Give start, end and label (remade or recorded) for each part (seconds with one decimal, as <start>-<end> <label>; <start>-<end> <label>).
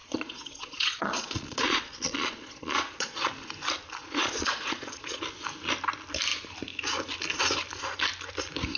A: 0.0-3.3 remade; 3.3-4.0 recorded; 4.0-5.2 remade; 5.2-8.8 recorded